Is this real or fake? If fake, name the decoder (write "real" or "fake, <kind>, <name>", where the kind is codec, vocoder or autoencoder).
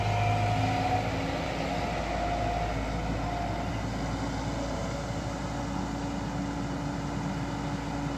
real